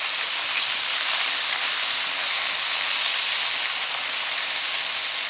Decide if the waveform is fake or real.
real